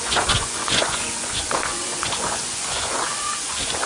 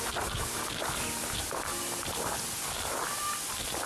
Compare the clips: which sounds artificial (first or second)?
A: first